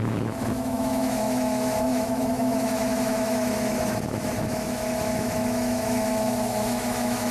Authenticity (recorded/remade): remade